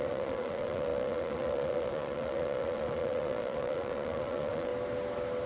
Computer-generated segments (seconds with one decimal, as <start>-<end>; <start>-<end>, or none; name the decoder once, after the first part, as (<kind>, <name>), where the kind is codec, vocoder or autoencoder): 0.0-4.7 (vocoder, Vocos)